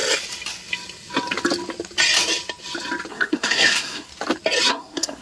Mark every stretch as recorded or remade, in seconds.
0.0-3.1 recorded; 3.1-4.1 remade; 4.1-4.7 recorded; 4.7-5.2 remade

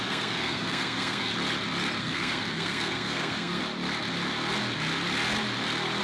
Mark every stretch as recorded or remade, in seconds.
0.0-1.3 remade; 1.3-2.0 recorded; 2.0-3.6 remade; 3.6-6.0 recorded

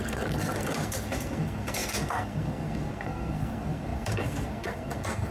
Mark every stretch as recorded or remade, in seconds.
0.0-5.3 remade

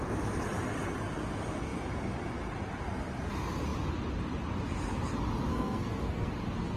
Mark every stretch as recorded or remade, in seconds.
0.0-5.5 recorded; 5.5-6.3 remade; 6.3-6.8 recorded

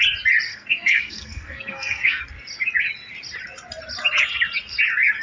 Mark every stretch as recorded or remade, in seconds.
0.0-0.5 recorded; 0.5-2.2 remade; 2.2-5.2 recorded